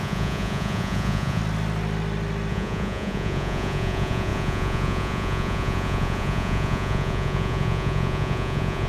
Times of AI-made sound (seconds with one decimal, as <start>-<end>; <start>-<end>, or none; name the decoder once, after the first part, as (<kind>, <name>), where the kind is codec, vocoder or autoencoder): 0.0-1.4 (vocoder, Vocos); 2.5-8.9